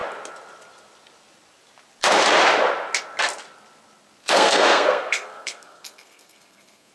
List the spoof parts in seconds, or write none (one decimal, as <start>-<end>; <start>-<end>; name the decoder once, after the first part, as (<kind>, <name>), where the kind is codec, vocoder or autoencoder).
4.2-6.9 (codec, SNAC)